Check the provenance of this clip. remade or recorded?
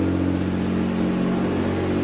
recorded